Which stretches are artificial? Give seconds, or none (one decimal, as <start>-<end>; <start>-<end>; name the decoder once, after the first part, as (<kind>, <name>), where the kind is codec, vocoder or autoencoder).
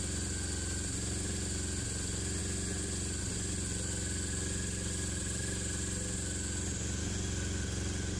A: none